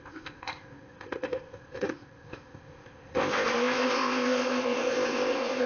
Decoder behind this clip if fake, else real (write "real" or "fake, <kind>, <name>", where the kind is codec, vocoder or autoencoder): fake, codec, ZipCodec